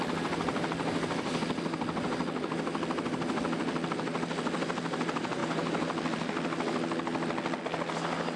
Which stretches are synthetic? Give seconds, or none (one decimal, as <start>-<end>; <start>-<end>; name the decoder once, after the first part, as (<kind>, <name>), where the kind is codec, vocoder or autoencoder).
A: none